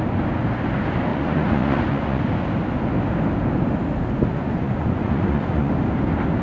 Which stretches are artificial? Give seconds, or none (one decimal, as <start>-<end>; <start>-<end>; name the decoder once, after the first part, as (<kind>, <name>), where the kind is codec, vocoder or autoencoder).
1.1-2.2 (vocoder, Vocos); 4.3-5.7

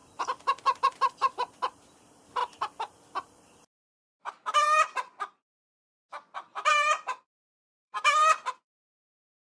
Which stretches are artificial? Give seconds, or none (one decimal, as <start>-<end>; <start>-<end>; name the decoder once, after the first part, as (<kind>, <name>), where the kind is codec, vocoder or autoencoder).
0.8-9.5 (vocoder, BigVGAN v2)

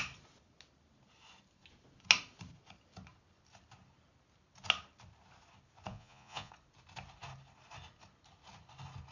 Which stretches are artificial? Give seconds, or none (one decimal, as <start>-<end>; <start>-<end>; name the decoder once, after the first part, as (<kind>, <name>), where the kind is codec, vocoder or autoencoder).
5.9-6.5 (vocoder, Vocos)